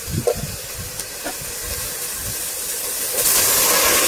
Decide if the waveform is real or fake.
real